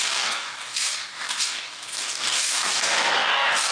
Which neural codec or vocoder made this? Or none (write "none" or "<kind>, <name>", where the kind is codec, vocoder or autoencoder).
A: codec, DAC